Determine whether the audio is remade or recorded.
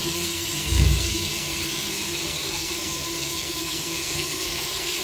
remade